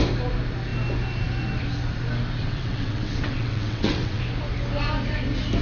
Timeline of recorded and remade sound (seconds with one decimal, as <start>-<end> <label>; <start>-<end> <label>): 0.0-2.4 recorded; 2.4-4.2 remade; 4.2-5.6 recorded